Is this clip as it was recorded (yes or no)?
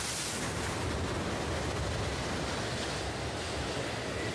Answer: yes